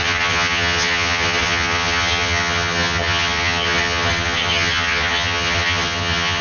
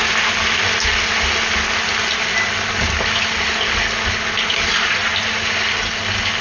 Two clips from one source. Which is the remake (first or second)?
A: first